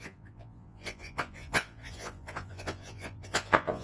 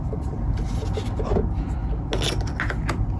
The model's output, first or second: first